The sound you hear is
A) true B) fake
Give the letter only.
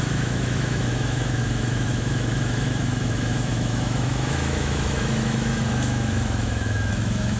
B